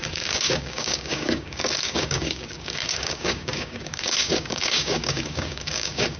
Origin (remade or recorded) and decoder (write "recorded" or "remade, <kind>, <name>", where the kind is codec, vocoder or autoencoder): remade, codec, DAC